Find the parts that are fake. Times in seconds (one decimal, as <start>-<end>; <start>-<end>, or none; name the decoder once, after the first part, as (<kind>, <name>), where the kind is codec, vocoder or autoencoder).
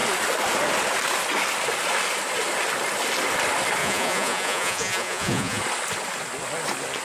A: 3.8-5.6 (vocoder, Vocos)